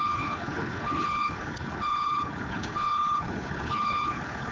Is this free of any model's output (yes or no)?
no